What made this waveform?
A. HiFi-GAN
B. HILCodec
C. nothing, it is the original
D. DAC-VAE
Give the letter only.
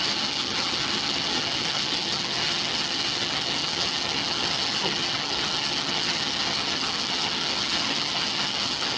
A